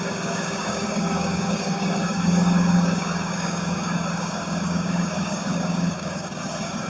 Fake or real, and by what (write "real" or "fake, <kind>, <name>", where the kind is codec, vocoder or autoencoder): fake, codec, DAC